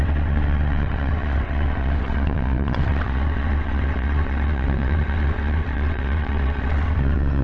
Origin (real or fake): fake